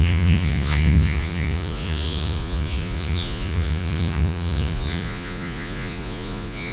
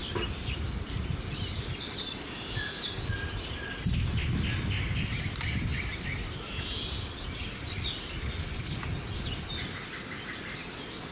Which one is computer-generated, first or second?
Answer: first